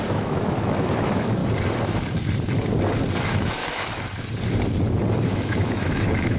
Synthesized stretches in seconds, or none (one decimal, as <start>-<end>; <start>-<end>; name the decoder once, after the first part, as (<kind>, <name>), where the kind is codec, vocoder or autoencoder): 0.0-1.4 (autoencoder, DAC-VAE); 3.2-3.6; 5.3-6.4

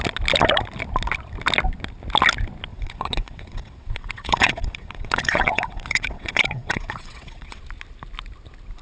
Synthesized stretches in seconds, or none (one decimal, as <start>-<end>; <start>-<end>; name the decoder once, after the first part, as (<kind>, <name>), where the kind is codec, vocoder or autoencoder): 2.7-7.6 (vocoder, WaveNeXt)

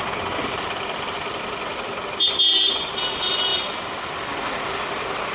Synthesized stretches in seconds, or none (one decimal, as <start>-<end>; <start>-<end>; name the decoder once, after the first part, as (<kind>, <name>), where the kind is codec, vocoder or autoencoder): none